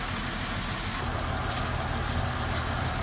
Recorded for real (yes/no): yes